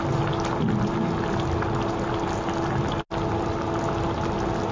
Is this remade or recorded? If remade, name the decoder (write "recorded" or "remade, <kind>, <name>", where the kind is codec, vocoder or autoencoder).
recorded